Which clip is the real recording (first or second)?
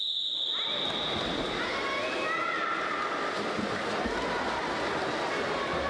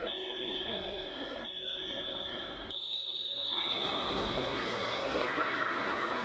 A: first